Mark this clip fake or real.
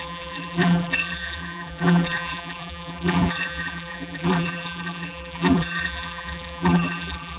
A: fake